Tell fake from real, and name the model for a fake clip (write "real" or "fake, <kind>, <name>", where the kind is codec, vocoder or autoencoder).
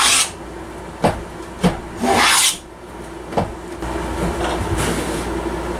real